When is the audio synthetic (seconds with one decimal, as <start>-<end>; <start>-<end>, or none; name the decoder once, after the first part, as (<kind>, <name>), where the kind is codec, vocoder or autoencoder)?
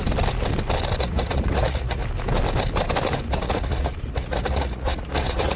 1.0-2.0 (vocoder, Vocos); 3.3-5.6